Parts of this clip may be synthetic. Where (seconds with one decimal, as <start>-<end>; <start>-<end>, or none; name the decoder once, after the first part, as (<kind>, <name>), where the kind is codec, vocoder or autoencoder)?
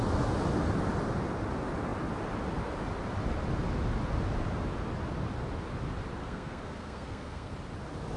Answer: 6.2-7.5 (codec, SNAC)